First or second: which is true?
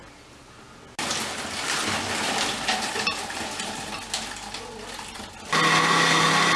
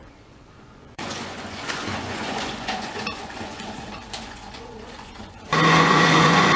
first